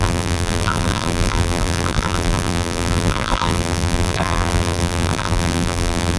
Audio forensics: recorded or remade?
remade